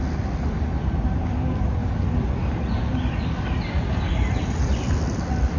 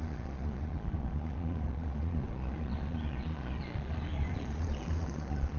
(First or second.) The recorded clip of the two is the first